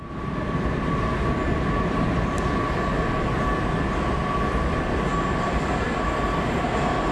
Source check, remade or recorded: recorded